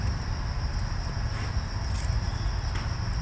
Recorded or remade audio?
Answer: recorded